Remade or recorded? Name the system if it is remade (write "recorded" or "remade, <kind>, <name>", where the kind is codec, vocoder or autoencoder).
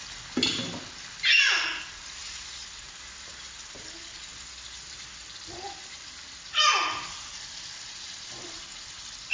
recorded